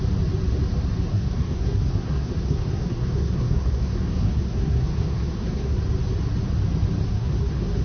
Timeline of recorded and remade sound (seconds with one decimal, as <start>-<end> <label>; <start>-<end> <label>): 0.0-1.1 recorded; 1.1-5.8 remade; 5.8-7.1 recorded; 7.1-7.8 remade